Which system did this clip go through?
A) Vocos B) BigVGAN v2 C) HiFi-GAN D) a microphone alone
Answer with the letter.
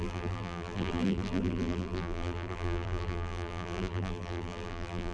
B